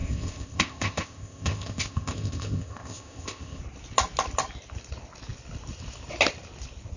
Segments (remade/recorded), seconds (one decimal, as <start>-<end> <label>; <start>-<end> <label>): 0.0-3.6 remade; 3.6-7.0 recorded